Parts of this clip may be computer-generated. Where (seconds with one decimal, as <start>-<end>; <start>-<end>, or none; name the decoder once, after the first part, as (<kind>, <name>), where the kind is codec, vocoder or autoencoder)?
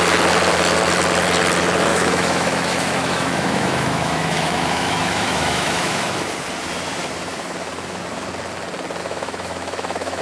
1.9-6.2 (autoencoder, DAC-VAE); 9.0-10.2